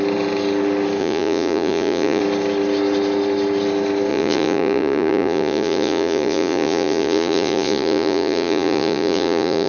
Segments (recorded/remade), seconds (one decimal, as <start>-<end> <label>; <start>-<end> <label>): 0.0-1.0 recorded; 1.0-2.2 remade; 2.2-4.1 recorded; 4.1-9.7 remade